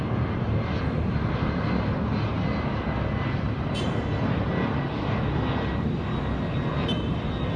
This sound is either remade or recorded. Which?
recorded